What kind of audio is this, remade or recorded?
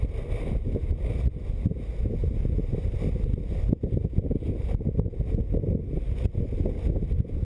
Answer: recorded